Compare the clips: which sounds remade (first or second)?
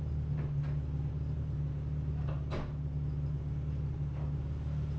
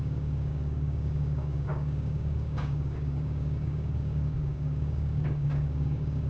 second